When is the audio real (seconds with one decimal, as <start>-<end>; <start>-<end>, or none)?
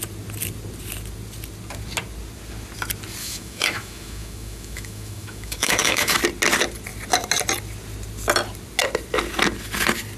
0.0-3.2; 6.2-10.2